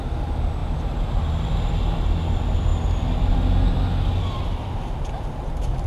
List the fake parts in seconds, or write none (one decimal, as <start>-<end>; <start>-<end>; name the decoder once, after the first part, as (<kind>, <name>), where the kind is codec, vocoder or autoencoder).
none